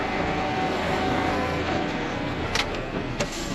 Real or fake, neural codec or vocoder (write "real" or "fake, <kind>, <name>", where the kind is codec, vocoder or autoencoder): fake, codec, SNAC